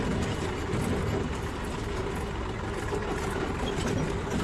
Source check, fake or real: real